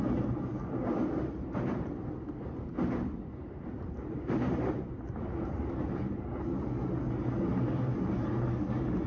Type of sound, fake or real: real